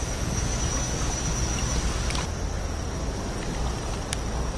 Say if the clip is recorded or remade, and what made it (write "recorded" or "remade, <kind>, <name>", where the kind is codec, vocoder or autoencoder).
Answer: recorded